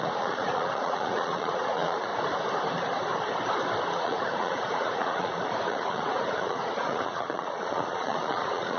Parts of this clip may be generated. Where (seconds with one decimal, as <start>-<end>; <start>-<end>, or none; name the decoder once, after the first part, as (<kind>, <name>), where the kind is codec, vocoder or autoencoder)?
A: 0.0-2.1 (vocoder, Vocos); 3.9-8.8